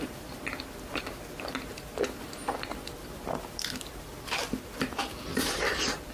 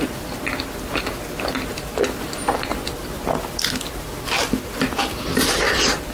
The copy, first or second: first